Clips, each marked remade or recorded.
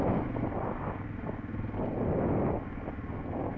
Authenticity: recorded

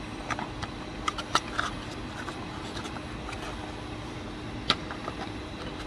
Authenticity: recorded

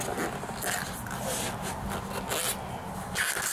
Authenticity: recorded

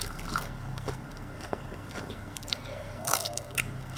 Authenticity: remade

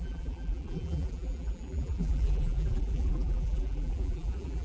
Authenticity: remade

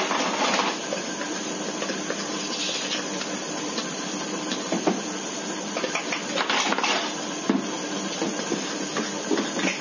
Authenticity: recorded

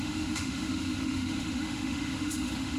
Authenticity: remade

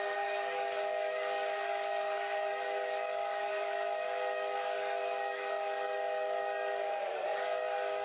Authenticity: remade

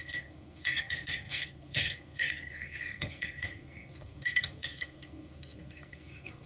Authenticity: remade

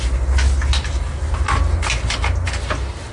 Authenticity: recorded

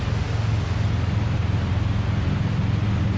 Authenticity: recorded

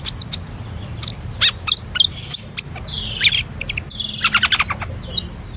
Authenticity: recorded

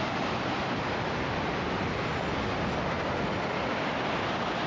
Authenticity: recorded